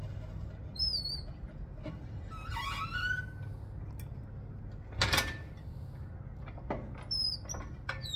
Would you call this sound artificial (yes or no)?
no